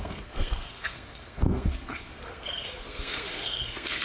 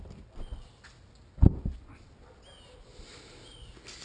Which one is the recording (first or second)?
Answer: second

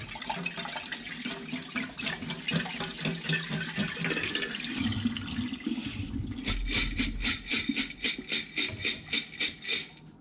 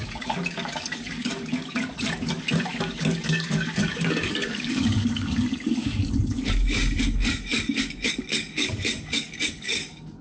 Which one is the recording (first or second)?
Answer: first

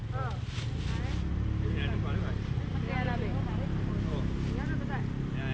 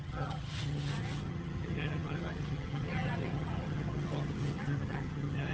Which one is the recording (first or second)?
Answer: first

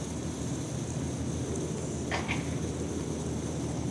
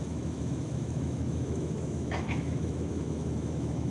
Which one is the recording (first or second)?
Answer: first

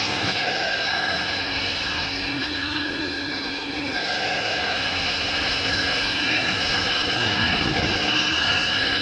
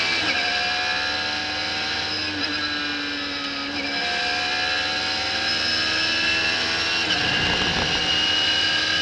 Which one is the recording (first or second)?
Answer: second